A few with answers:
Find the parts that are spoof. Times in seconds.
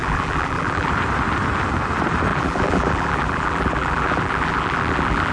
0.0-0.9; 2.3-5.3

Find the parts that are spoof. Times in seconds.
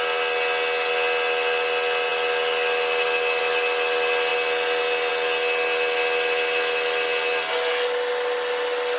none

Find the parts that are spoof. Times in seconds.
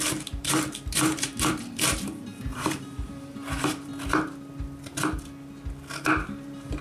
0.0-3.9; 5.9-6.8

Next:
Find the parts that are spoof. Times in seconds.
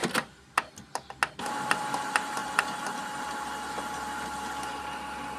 none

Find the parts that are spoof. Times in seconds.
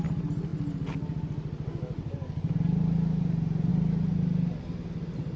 none